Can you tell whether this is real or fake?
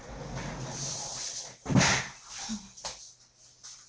real